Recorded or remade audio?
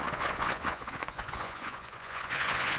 remade